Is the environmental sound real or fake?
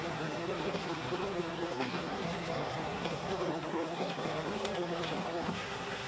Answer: fake